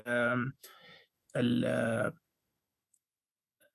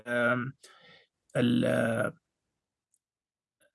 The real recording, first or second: second